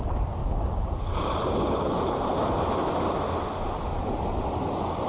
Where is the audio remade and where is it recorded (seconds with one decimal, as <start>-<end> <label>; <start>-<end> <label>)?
0.0-5.1 recorded

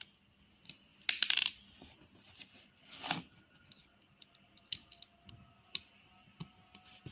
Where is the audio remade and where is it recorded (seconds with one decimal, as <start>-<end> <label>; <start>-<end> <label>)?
0.0-7.1 recorded

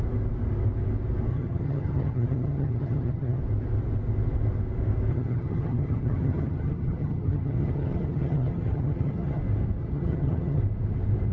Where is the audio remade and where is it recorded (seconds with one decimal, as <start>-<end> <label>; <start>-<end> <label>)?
0.0-1.3 recorded; 1.3-3.4 remade; 3.4-5.1 recorded; 5.1-9.4 remade; 9.4-9.8 recorded; 9.8-10.6 remade; 10.6-11.3 recorded

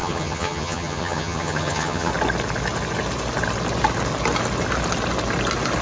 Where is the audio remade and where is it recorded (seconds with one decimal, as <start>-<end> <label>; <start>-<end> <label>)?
0.0-2.1 remade; 2.1-5.8 recorded